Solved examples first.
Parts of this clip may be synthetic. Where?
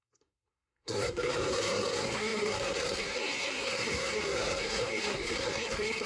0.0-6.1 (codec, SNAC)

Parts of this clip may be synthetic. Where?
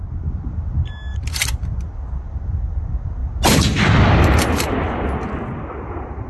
none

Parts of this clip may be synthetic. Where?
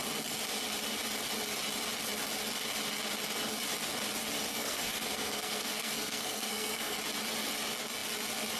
4.5-7.0 (codec, SNAC)